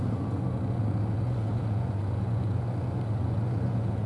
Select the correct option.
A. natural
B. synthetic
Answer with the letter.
B